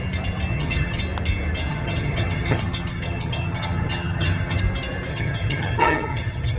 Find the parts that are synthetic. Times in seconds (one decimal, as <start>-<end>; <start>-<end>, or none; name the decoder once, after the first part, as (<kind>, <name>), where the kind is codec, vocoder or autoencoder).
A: 0.5-1.0 (vocoder, HiFi-GAN); 1.7-4.6; 5.1-6.6